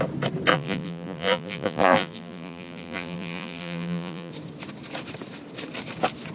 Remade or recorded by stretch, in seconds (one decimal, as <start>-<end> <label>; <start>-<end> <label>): 0.0-0.5 recorded; 0.5-4.3 remade; 4.3-6.3 recorded